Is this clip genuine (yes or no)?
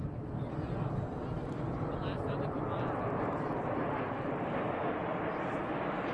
no